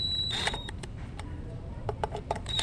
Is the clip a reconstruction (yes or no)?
yes